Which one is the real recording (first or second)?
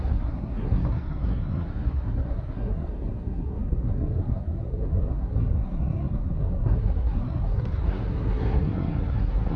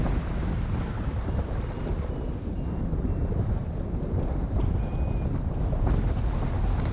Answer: second